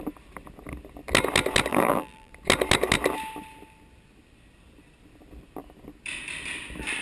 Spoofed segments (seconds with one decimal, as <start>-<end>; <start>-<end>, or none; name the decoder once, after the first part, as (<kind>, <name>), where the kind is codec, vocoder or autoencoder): 1.7-2.3 (vocoder, BigVGAN v2)